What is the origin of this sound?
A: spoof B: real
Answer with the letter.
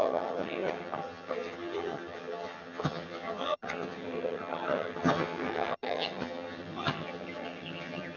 A